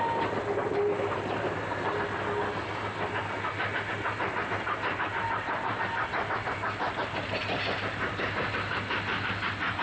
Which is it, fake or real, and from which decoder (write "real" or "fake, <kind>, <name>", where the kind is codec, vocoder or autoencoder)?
real